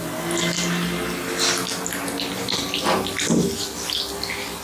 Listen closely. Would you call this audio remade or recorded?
recorded